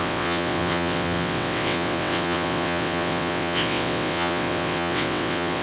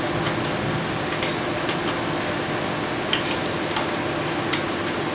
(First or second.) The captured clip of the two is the second